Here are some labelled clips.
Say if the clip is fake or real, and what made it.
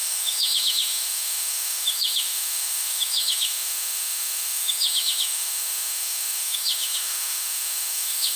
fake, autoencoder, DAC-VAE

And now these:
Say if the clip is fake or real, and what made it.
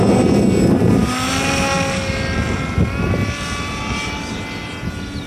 real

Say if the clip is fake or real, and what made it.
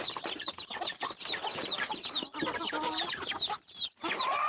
real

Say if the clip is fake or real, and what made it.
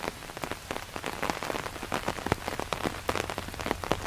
fake, vocoder, BigVGAN v2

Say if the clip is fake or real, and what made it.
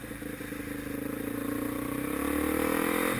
real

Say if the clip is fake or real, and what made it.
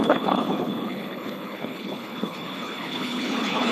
fake, codec, HILCodec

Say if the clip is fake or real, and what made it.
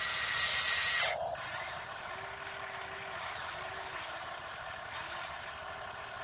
real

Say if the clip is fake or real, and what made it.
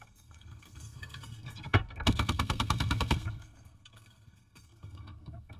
fake, codec, SNAC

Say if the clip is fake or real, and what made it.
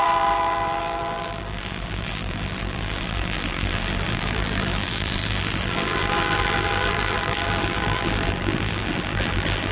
fake, vocoder, BigVGAN v2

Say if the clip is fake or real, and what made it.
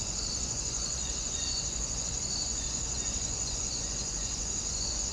fake, vocoder, Vocos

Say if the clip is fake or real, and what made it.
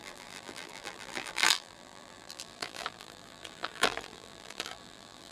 fake, vocoder, BigVGAN v2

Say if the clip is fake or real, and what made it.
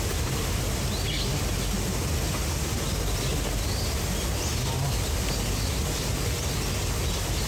real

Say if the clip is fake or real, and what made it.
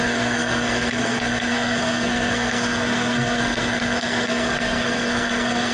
fake, codec, SNAC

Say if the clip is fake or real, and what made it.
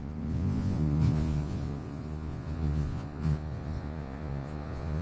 fake, vocoder, Vocos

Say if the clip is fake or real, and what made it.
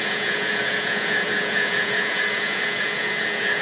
fake, vocoder, Vocos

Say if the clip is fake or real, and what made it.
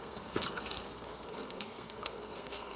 fake, codec, SNAC